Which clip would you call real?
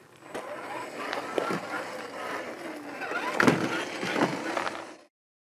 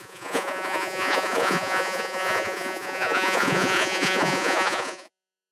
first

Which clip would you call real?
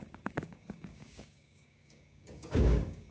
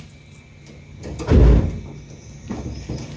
second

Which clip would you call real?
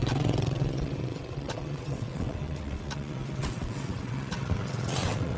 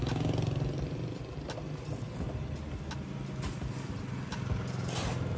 second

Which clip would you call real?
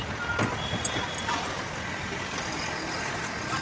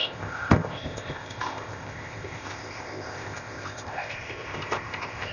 first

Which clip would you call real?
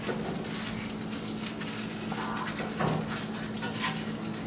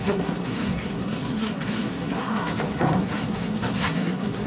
first